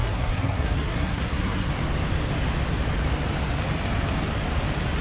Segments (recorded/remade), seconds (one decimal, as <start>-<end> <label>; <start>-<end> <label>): 0.0-1.7 remade; 1.7-5.0 recorded